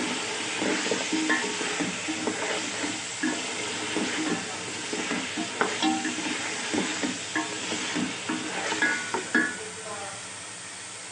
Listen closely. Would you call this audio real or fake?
real